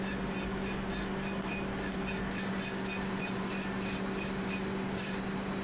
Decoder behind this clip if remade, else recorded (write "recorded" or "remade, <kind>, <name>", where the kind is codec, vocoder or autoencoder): recorded